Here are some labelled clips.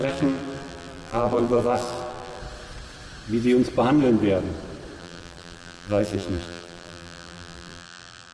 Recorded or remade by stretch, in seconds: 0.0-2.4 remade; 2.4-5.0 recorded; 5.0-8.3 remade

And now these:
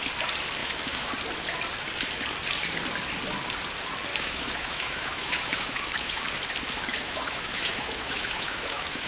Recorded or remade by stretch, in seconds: 0.0-0.6 recorded; 0.6-1.1 remade; 1.1-4.1 recorded; 4.1-6.2 remade; 6.2-6.9 recorded; 6.9-9.1 remade

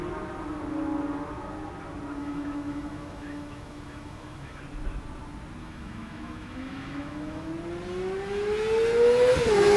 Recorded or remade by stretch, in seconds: 0.0-2.2 recorded; 2.2-4.6 remade; 4.6-5.6 recorded; 5.6-7.5 remade; 7.5-9.8 recorded

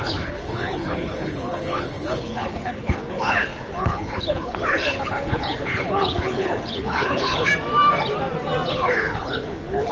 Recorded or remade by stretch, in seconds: 0.0-7.5 remade; 7.5-8.7 recorded; 8.7-9.9 remade